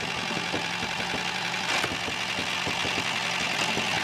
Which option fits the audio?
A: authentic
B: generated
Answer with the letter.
A